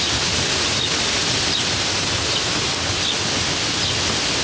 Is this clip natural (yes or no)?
yes